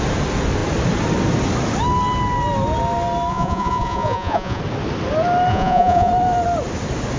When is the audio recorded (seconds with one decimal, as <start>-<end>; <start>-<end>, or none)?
0.0-3.3; 4.6-5.5; 6.1-7.2